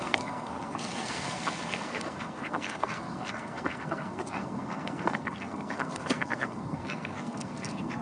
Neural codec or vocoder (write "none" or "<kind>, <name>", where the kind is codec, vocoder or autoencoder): codec, SNAC